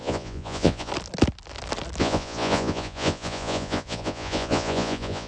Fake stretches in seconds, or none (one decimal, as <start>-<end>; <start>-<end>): 0.0-0.9; 2.0-5.3